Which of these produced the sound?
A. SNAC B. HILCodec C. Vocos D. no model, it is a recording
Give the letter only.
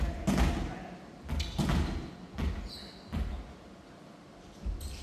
D